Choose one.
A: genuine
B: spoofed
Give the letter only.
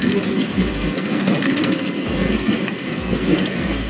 B